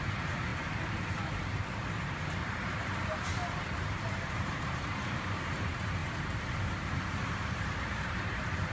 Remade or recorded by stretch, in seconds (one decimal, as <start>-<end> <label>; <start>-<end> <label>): 0.0-6.0 remade; 6.0-6.6 recorded; 6.6-8.7 remade